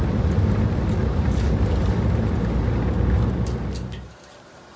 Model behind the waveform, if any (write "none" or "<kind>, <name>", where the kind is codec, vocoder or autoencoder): none